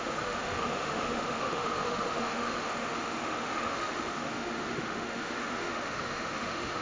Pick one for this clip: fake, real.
fake